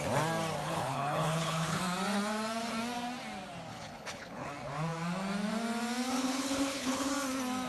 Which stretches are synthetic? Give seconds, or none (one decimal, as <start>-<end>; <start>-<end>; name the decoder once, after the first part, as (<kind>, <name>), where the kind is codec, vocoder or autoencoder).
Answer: 0.6-1.8 (codec, HILCodec); 3.7-4.5; 6.1-7.1